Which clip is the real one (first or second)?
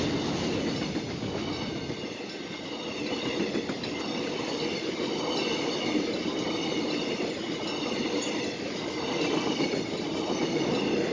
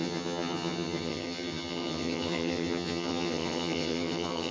first